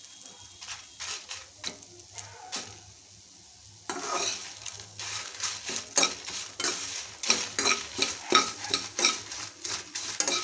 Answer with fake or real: real